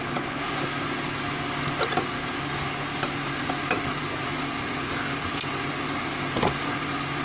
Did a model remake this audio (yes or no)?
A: no